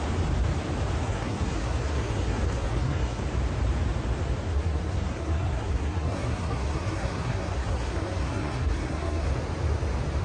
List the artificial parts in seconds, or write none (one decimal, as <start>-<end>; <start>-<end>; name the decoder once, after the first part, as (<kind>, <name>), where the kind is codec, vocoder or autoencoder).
1.0-3.2 (codec, SNAC); 4.5-9.3